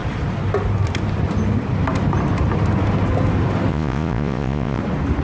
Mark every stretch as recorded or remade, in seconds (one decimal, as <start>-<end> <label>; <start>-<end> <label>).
0.0-3.7 recorded; 3.7-4.8 remade; 4.8-5.2 recorded